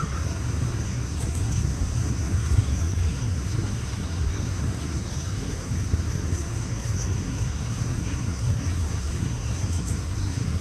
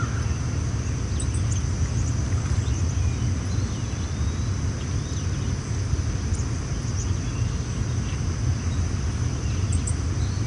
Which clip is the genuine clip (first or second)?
second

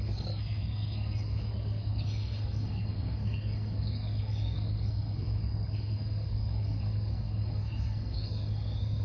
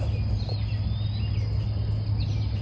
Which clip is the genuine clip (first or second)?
second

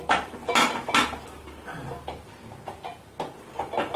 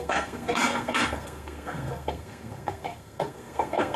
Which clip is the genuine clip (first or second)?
first